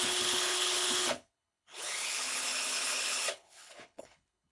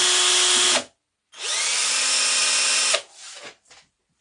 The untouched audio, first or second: second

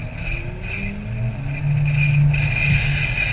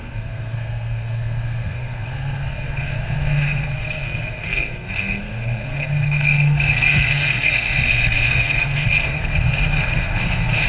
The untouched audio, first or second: first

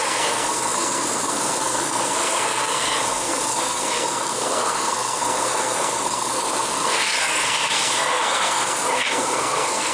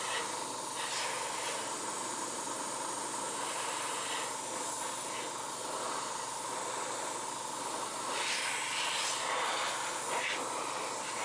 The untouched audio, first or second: second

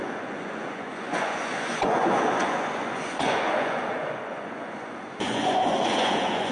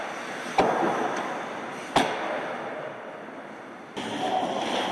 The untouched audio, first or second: second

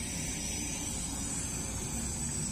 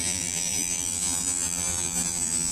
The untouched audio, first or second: first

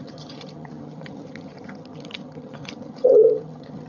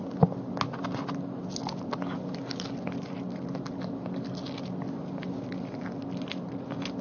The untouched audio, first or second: second